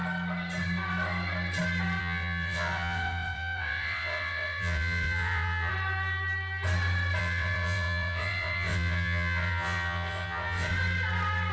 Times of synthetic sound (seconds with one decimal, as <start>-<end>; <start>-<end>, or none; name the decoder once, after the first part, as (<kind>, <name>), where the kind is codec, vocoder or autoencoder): 2.0-5.7 (vocoder, WaveNeXt); 7.2-10.7